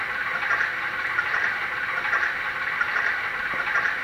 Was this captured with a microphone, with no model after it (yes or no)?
no